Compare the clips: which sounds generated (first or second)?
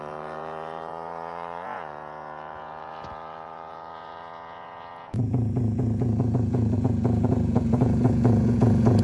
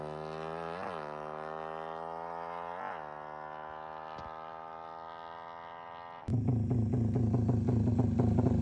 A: first